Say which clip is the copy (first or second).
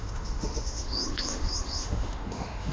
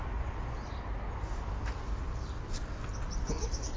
first